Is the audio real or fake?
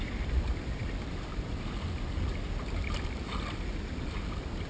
real